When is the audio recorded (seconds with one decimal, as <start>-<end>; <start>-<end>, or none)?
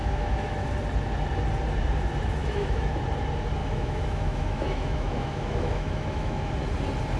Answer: 0.7-2.4; 3.0-3.6; 6.5-7.2